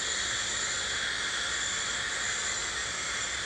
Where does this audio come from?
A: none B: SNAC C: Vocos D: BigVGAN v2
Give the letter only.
A